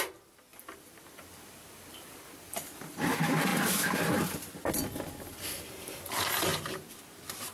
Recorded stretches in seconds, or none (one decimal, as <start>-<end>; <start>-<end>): 0.0-0.5; 3.1-6.5; 7.0-7.5